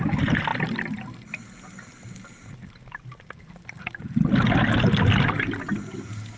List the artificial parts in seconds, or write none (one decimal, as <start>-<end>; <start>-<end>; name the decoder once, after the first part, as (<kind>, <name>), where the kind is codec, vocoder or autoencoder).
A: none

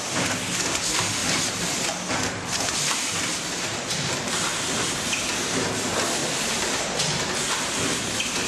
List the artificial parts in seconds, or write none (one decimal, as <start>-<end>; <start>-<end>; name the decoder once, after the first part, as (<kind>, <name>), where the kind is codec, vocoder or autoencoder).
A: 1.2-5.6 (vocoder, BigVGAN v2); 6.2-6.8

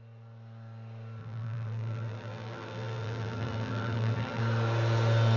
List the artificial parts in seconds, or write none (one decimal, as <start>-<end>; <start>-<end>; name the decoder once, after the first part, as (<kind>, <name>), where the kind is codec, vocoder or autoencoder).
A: 1.2-4.4 (vocoder, BigVGAN v2)

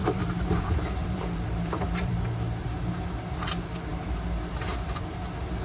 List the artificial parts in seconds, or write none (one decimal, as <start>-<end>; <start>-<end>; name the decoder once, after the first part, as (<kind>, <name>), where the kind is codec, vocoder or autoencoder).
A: 0.0-2.1 (vocoder, BigVGAN v2)

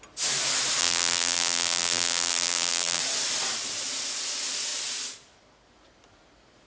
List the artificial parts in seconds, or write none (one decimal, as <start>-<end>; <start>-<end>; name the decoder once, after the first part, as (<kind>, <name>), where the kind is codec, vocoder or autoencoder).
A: 0.8-3.0 (vocoder, BigVGAN v2)

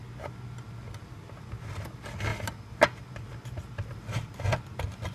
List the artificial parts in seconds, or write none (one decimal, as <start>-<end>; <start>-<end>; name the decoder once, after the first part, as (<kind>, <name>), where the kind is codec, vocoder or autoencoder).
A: none